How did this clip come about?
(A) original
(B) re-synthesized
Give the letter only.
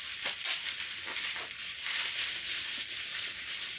B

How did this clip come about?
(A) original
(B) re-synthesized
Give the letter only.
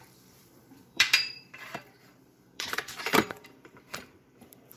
B